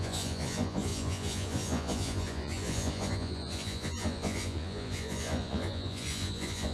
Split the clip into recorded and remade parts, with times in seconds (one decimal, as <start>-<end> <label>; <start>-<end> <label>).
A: 0.0-6.7 remade